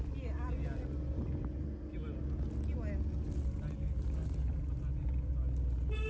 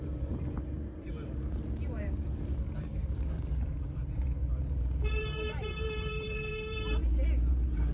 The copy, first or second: second